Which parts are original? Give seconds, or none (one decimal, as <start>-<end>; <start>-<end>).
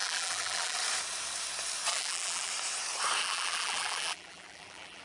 0.8-1.9; 2.5-3.2